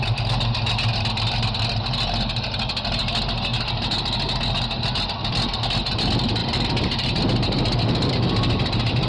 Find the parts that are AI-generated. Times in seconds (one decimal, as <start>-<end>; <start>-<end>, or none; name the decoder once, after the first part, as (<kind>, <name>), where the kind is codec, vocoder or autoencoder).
none